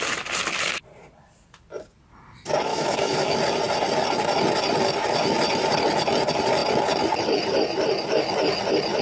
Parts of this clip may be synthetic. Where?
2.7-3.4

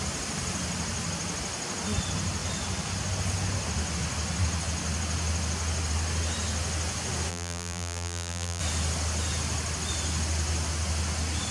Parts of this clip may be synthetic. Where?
7.3-8.6

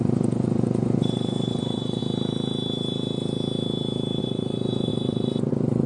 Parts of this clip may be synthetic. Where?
0.0-2.0; 4.2-5.9

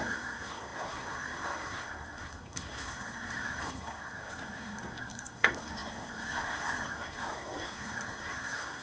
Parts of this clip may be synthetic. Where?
0.0-8.8

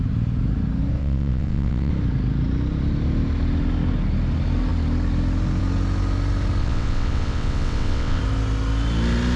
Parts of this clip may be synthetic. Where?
1.0-1.9; 6.6-8.2

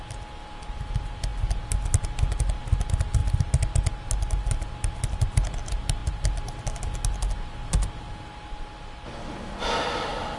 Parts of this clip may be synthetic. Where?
none

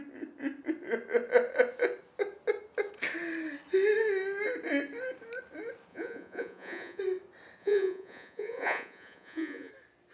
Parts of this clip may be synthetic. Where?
5.9-7.0; 7.6-9.7

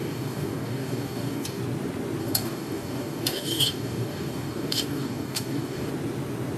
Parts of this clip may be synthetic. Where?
0.0-1.6; 2.2-5.9